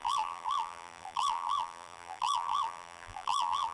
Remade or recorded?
remade